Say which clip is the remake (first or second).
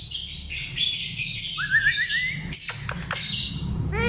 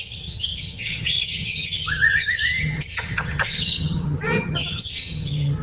second